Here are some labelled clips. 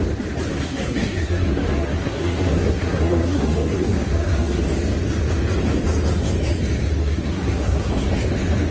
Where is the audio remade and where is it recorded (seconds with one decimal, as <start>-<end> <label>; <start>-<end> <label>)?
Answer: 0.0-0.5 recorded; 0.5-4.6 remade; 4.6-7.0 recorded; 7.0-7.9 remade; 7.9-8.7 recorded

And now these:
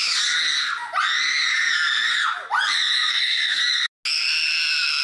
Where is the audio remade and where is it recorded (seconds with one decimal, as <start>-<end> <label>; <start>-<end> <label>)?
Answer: 0.0-3.1 recorded; 3.1-3.6 remade; 3.6-5.0 recorded

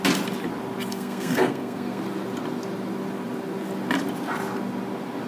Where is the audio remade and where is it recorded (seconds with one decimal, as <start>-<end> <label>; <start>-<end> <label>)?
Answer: 0.0-0.9 recorded; 0.9-2.0 remade; 2.0-5.3 recorded

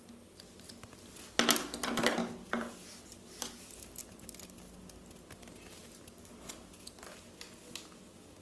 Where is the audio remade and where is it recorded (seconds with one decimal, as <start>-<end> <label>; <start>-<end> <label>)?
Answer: 0.0-8.4 recorded

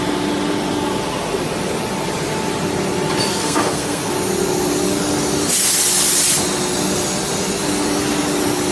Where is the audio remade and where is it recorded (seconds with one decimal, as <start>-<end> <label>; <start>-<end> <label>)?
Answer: 0.0-3.3 recorded; 3.3-4.1 remade; 4.1-8.7 recorded

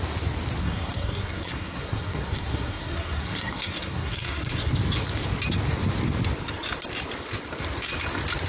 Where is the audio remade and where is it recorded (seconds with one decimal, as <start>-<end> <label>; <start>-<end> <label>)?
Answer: 0.0-0.6 recorded; 0.6-4.7 remade; 4.7-8.5 recorded